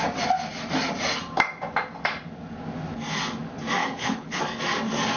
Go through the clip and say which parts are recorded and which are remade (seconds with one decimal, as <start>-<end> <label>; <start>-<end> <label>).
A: 0.0-3.8 recorded; 3.8-4.4 remade; 4.4-5.2 recorded